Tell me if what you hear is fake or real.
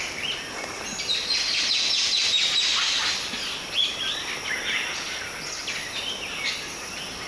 real